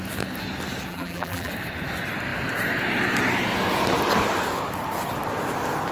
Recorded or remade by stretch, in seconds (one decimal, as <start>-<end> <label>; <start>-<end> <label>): 0.0-0.9 recorded; 0.9-1.5 remade; 1.5-5.9 recorded